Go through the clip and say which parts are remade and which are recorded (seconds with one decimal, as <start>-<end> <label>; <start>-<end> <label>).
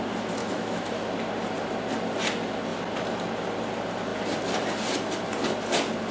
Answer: 0.0-0.4 recorded; 0.4-0.9 remade; 0.9-6.1 recorded